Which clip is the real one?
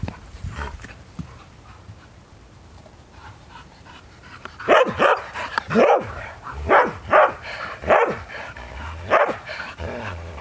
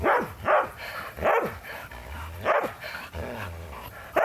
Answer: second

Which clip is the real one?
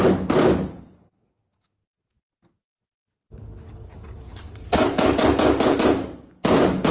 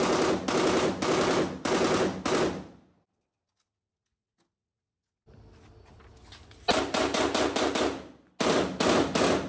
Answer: second